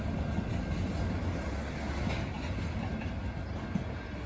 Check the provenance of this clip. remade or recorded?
recorded